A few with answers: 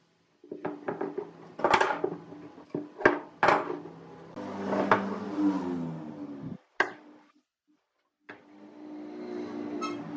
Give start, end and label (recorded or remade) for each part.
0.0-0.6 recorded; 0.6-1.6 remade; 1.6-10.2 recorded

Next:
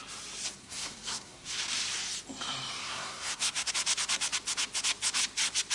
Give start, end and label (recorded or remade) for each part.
0.0-0.6 recorded; 0.6-1.5 remade; 1.5-2.8 recorded; 2.8-3.7 remade; 3.7-5.7 recorded

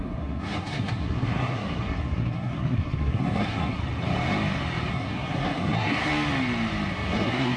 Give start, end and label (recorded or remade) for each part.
0.0-3.8 remade; 3.8-4.9 recorded; 4.9-6.1 remade; 6.1-6.9 recorded; 6.9-7.6 remade

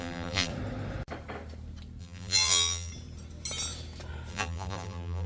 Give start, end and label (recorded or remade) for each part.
0.0-0.5 remade; 0.5-2.0 recorded; 2.0-2.9 remade; 2.9-4.3 recorded; 4.3-5.3 remade

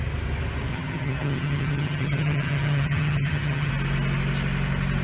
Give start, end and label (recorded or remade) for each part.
0.0-0.7 recorded; 0.7-3.7 remade; 3.7-5.0 recorded

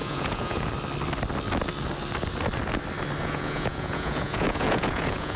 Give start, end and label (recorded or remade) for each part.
0.0-0.7 remade; 0.7-3.2 recorded; 3.2-5.4 remade